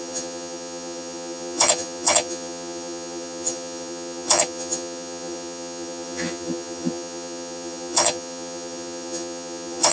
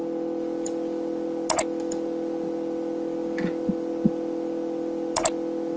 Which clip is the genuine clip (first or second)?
second